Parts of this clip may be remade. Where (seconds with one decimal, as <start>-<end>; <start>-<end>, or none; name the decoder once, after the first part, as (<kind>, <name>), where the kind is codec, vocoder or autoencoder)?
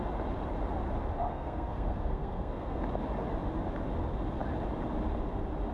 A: 1.3-2.8 (codec, SNAC)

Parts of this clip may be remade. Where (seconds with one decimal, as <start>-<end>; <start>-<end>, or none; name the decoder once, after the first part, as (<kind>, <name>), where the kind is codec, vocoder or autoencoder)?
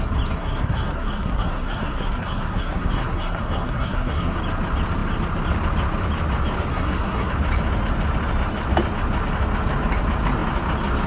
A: 0.4-4.4 (codec, SNAC); 6.7-7.3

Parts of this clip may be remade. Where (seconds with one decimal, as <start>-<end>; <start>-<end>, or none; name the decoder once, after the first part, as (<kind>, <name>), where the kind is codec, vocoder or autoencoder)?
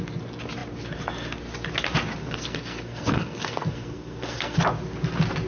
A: 2.2-4.6 (codec, SNAC)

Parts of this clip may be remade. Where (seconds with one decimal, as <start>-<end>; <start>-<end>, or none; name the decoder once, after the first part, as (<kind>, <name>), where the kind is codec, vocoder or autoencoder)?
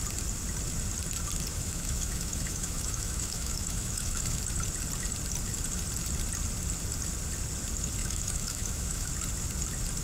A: 1.5-4.4 (autoencoder, DAC-VAE); 8.0-9.1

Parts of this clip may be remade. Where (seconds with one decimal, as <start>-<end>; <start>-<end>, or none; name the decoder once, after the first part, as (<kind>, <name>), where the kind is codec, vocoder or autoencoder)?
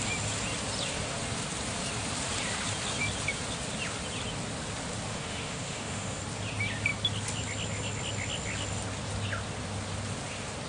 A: 5.1-6.2 (autoencoder, DAC-VAE)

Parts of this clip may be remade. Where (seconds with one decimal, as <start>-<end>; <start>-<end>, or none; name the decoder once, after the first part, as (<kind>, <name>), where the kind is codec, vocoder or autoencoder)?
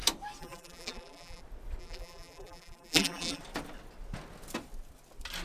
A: 0.4-1.4 (vocoder, BigVGAN v2); 1.8-3.4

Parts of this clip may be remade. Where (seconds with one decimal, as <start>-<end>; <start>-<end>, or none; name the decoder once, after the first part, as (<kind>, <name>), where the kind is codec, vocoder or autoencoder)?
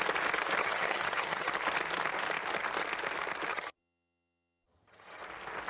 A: 0.6-1.5 (vocoder, HiFi-GAN); 3.5-5.2